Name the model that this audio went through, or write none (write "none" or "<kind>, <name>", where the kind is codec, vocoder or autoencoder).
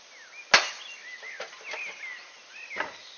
none